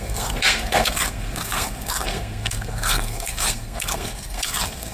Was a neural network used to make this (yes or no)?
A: yes